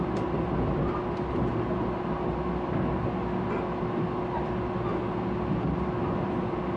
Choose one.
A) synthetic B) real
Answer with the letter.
B